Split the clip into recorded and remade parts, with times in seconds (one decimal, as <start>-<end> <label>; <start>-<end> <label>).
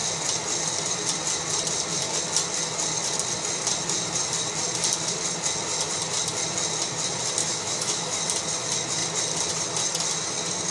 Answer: 0.0-7.4 recorded; 7.4-8.2 remade; 8.2-10.7 recorded